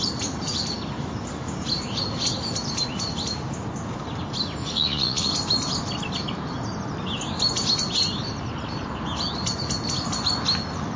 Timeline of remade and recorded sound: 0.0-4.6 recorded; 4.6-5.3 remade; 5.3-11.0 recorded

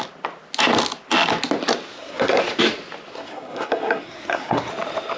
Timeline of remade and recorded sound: 0.0-1.9 recorded; 1.9-2.4 remade; 2.4-3.1 recorded; 3.1-4.7 remade; 4.7-5.2 recorded

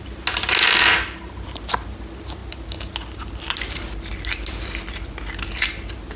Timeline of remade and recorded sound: 0.0-6.2 recorded

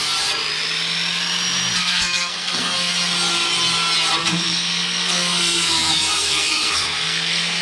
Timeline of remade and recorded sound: 0.0-1.8 recorded; 1.8-2.9 remade; 2.9-4.2 recorded; 4.2-7.6 remade

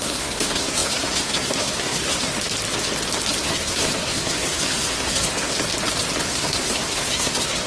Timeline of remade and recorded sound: 0.0-2.3 remade; 2.3-3.4 recorded; 3.4-5.5 remade; 5.5-6.2 recorded; 6.2-7.7 remade

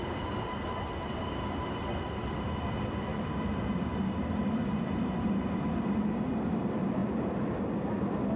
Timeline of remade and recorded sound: 0.0-8.4 recorded

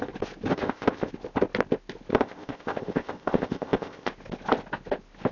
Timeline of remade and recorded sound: 0.0-0.5 recorded; 0.5-1.1 remade; 1.1-2.1 recorded; 2.1-4.1 remade; 4.1-5.3 recorded

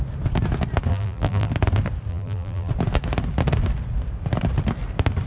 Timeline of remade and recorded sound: 0.0-0.9 recorded; 0.9-1.5 remade; 1.5-2.1 recorded; 2.1-2.7 remade; 2.7-5.3 recorded